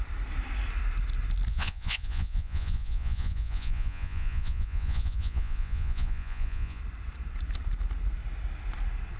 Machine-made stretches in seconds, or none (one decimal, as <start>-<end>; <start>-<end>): 1.5-6.8